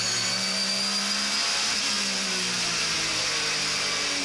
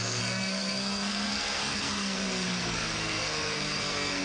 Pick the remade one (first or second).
second